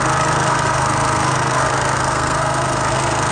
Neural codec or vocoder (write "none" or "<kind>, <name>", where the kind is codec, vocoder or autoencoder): codec, SNAC